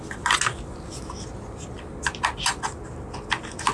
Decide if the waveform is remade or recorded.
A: recorded